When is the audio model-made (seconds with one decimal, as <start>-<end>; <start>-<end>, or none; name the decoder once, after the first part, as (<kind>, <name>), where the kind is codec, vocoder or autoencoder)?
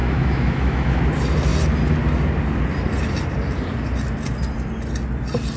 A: 0.0-1.0 (autoencoder, DAC-VAE)